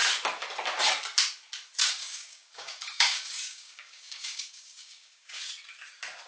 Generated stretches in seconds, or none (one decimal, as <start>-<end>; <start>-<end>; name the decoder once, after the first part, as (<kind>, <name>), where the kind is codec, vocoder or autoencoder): 1.8-5.5 (codec, DAC)